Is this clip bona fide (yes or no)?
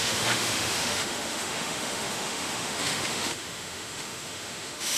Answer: no